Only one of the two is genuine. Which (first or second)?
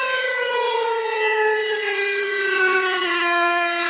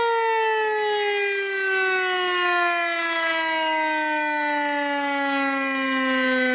second